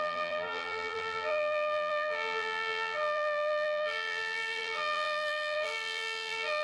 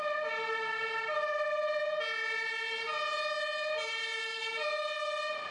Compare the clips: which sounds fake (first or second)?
first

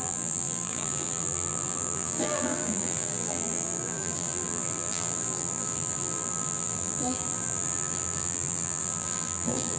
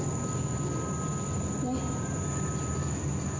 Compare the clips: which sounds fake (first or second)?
first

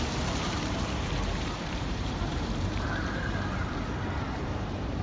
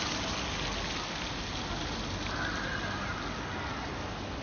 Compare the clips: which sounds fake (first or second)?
first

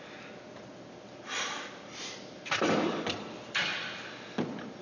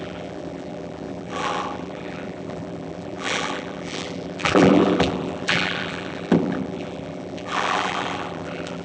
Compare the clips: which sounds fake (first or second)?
second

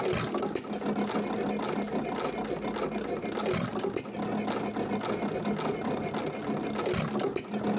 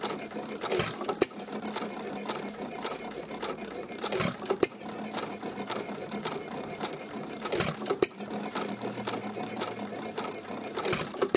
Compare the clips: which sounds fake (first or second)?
second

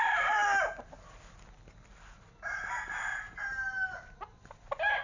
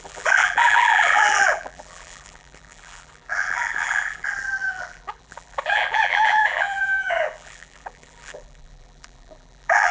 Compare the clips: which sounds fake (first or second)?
second